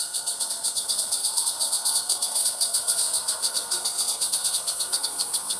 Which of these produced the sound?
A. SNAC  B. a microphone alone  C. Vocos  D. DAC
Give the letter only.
A